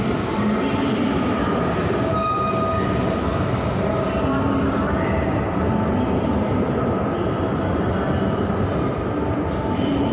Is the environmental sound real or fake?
real